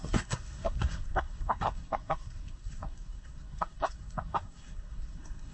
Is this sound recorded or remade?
remade